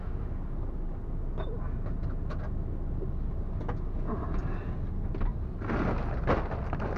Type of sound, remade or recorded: recorded